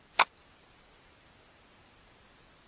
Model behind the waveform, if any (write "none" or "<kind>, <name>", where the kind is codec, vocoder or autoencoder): none